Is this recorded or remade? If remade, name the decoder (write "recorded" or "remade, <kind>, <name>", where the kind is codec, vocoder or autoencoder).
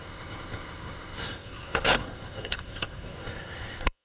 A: remade, codec, SNAC